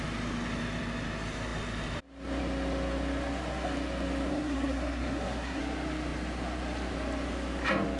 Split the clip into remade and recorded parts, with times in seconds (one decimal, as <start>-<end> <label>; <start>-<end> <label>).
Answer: 0.0-4.3 recorded; 4.3-5.6 remade; 5.6-8.0 recorded